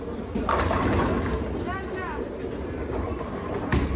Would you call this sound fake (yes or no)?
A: no